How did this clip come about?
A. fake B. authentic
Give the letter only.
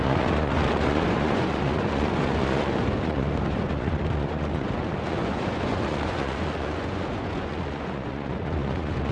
A